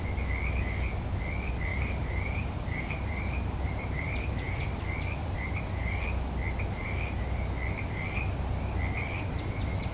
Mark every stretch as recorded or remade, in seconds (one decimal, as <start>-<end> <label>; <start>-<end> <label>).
0.0-1.7 recorded; 1.7-4.8 remade; 4.8-5.2 recorded; 5.2-5.9 remade; 5.9-9.9 recorded